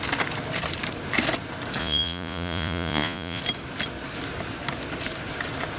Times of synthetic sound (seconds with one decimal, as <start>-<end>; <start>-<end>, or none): 1.8-3.4

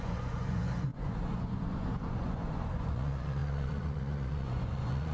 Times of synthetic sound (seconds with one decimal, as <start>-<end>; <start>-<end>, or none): 0.0-5.1

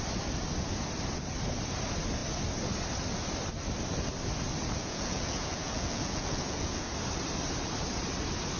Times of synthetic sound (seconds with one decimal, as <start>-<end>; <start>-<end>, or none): 4.8-6.9

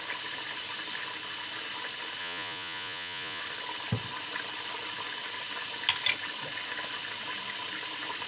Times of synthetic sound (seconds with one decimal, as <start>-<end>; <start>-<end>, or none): 2.2-3.4

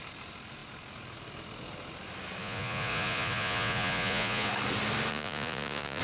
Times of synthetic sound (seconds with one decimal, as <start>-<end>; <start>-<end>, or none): 2.4-4.5; 5.1-6.0

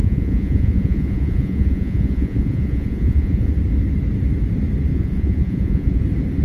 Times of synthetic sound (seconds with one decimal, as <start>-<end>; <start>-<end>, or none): 0.0-3.5; 4.9-6.0

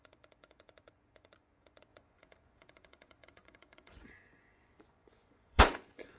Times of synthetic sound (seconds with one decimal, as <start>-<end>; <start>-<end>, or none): 0.0-6.2

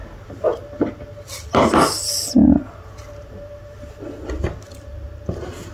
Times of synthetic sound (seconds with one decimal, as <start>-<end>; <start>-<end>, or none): none